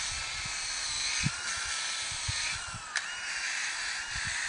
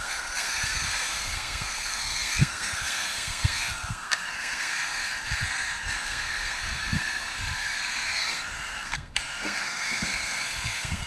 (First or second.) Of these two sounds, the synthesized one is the second